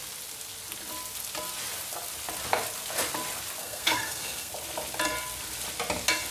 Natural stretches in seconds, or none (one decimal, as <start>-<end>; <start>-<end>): 0.0-3.6; 4.5-6.3